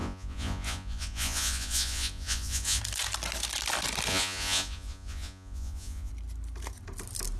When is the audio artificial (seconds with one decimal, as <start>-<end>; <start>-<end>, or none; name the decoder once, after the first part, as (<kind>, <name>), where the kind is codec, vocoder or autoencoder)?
0.0-2.8 (vocoder, Vocos); 4.1-6.1